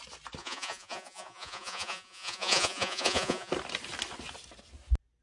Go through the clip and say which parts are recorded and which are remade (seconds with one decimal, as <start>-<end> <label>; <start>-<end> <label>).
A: 0.0-0.4 recorded; 0.4-3.5 remade; 3.5-5.2 recorded